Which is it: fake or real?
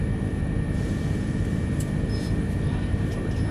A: fake